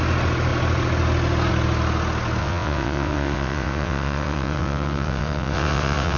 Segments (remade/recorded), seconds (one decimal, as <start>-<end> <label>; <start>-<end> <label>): 0.0-2.4 recorded; 2.4-6.2 remade